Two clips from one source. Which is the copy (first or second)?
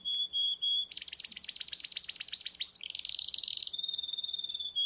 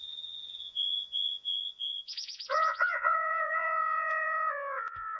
second